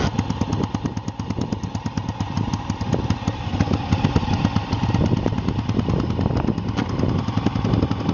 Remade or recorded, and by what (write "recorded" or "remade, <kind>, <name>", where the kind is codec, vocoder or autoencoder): recorded